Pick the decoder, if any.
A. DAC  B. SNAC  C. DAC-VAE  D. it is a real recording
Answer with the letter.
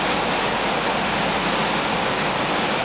D